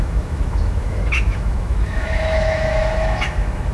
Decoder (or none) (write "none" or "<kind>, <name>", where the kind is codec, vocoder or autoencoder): autoencoder, DAC-VAE